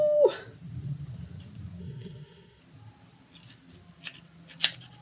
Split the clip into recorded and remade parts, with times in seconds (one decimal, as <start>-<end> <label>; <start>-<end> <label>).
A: 0.0-1.8 recorded; 1.8-2.6 remade; 2.6-5.0 recorded